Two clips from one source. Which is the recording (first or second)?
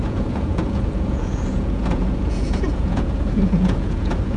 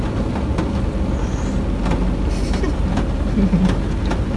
second